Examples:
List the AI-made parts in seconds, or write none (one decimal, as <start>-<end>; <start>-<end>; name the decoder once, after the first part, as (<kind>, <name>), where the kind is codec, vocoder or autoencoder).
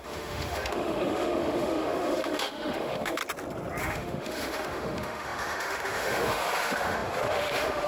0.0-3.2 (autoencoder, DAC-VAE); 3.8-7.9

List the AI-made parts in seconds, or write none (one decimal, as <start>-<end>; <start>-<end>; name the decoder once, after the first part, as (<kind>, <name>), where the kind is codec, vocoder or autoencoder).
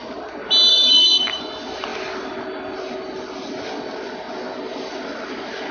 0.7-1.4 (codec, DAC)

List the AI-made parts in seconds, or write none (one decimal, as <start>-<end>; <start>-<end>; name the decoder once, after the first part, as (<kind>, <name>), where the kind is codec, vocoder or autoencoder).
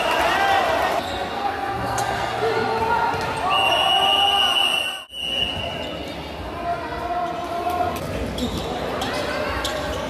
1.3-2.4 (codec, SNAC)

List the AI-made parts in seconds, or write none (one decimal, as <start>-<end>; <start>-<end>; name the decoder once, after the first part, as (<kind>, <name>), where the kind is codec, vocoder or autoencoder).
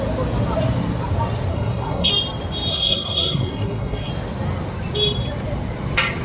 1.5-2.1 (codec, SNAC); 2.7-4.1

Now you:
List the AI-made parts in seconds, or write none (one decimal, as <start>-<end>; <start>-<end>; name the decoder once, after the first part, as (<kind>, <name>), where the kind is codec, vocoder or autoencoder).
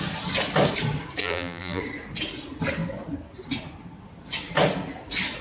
1.2-1.8 (vocoder, BigVGAN v2)